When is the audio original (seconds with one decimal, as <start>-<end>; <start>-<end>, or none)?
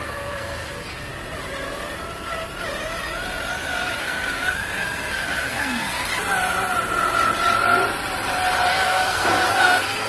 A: 1.1-4.0; 6.1-8.7